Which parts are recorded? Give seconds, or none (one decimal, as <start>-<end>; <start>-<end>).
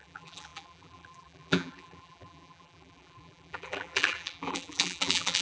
none